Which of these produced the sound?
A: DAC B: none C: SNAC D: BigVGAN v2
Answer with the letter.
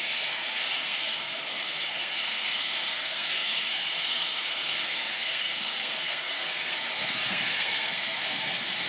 C